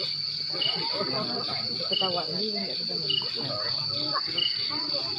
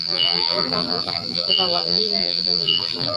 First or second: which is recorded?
first